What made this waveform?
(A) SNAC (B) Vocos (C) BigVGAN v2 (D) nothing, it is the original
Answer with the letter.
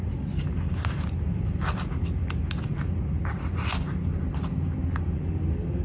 D